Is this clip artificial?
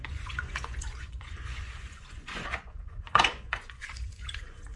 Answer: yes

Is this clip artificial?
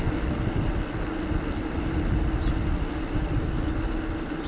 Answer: no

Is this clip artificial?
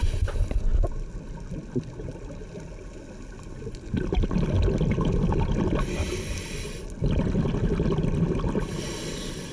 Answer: no